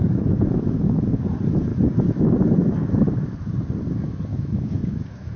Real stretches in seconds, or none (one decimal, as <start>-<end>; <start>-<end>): 1.1-1.7; 2.3-4.3